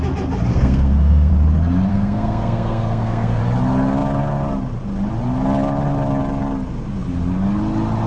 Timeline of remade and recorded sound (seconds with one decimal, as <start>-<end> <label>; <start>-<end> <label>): 0.0-0.5 recorded; 0.5-1.3 remade; 1.3-1.9 recorded; 1.9-3.4 remade; 3.4-8.1 recorded